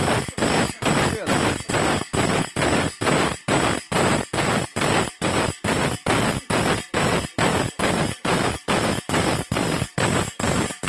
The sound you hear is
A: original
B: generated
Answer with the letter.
A